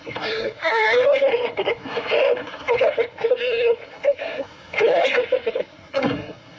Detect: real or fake fake